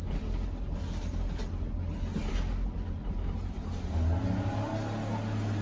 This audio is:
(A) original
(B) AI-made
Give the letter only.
A